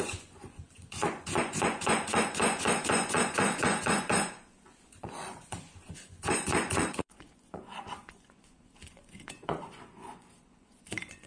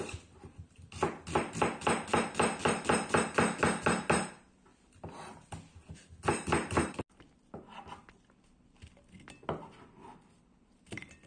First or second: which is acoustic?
second